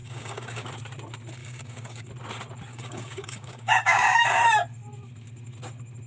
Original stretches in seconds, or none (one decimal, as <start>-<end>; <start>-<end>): 0.7-1.4; 2.1-2.7; 4.4-6.1